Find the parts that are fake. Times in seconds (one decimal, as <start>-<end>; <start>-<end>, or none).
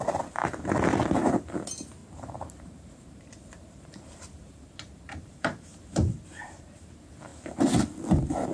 2.0-6.7